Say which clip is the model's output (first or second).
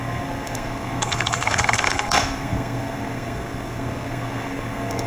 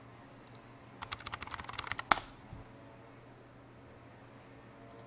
first